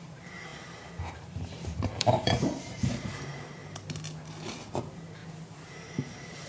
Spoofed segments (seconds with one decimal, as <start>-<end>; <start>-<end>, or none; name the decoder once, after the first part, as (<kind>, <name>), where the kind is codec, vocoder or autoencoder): 0.0-3.6 (vocoder, BigVGAN v2); 4.8-5.2; 5.7-6.5